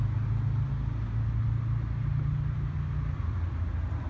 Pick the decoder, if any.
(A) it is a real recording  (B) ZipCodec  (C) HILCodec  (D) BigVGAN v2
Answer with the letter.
A